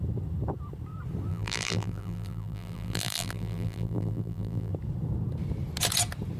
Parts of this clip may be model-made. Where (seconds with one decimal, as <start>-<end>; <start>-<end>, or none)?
1.3-4.7